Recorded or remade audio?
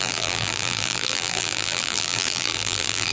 remade